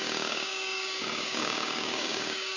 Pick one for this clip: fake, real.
fake